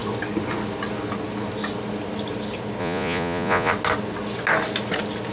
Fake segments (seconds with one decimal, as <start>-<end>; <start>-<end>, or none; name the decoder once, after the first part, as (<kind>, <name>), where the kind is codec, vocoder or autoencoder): 2.8-3.7 (vocoder, Vocos)